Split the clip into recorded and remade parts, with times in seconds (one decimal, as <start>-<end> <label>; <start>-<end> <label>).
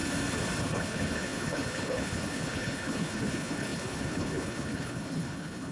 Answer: 0.0-0.6 recorded; 0.6-5.7 remade